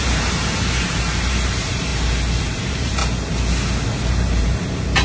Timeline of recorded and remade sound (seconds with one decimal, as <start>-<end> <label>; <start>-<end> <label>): 0.0-1.9 remade; 1.9-2.4 recorded; 2.4-3.0 remade; 3.0-4.1 recorded; 4.1-5.0 remade